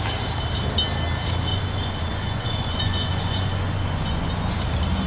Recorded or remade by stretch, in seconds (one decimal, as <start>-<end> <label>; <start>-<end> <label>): 0.0-1.5 recorded; 1.5-4.6 remade; 4.6-5.1 recorded